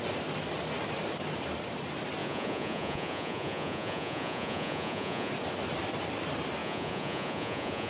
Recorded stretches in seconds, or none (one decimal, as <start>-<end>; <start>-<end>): 0.0-2.2; 5.3-6.6